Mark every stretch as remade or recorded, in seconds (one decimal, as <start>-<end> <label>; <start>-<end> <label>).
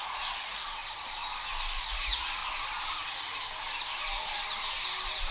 0.0-0.8 remade; 0.8-1.9 recorded; 1.9-2.4 remade; 2.4-5.3 recorded